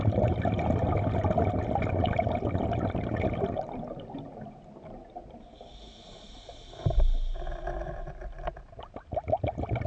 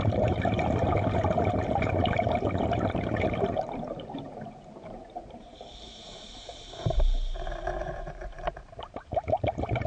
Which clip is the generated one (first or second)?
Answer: second